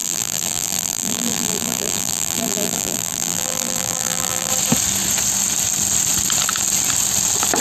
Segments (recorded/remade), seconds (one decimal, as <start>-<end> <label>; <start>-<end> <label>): 0.0-4.5 remade; 4.5-7.6 recorded